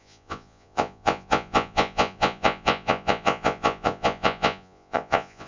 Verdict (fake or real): fake